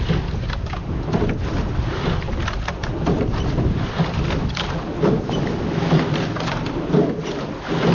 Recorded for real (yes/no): yes